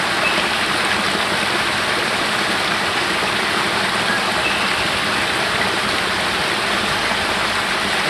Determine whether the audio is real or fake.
real